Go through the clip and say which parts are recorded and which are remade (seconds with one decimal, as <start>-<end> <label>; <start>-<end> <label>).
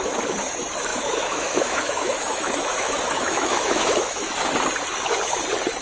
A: 0.0-0.9 recorded; 0.9-4.4 remade; 4.4-5.8 recorded